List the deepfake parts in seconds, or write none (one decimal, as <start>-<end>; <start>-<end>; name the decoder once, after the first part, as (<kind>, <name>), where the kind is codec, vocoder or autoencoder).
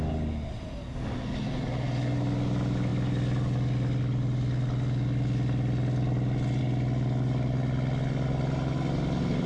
none